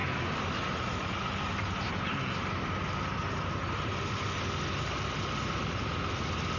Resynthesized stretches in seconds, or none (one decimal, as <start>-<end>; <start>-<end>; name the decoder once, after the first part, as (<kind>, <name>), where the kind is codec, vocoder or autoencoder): none